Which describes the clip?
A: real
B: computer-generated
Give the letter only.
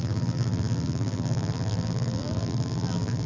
B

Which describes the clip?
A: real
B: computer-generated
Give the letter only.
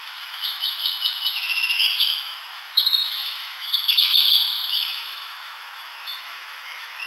B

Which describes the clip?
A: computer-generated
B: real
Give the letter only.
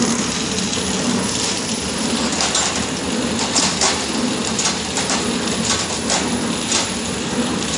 B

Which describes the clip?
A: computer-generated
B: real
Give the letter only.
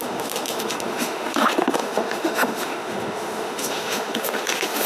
A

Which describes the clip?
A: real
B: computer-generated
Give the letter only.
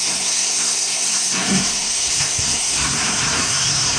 B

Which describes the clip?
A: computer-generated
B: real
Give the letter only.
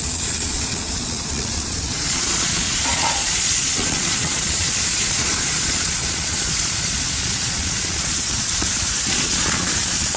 A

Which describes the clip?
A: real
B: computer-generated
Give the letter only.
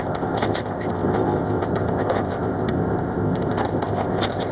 B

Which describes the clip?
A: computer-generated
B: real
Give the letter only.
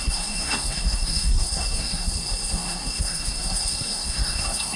A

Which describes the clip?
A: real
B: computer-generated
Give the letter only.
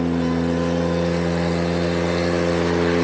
A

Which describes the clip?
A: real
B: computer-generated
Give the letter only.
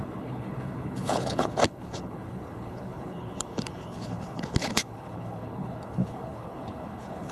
B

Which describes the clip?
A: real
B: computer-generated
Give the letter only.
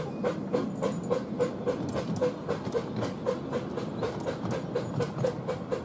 A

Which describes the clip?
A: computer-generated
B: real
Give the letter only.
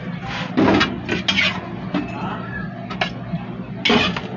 B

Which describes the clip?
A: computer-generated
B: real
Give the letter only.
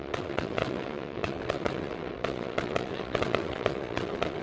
A